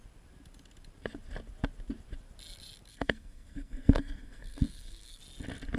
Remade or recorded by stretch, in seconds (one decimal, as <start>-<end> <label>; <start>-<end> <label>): 0.0-2.9 recorded; 2.9-5.2 remade; 5.2-5.8 recorded